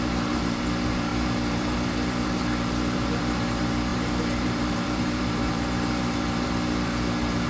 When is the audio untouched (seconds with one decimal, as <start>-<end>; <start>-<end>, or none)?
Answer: none

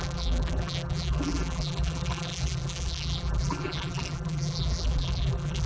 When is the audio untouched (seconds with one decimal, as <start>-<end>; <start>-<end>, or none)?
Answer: none

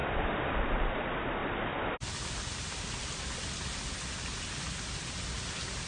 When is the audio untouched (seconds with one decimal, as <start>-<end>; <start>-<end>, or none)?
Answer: 0.5-1.4; 3.5-5.9